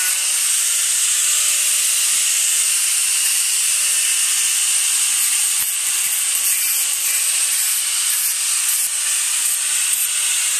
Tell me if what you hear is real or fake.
real